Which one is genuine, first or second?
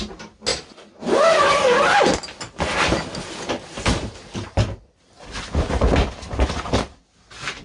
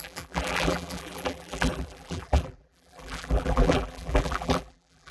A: first